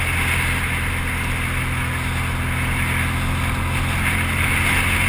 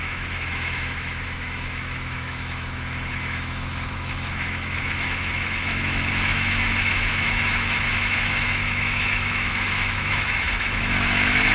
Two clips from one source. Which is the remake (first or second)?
second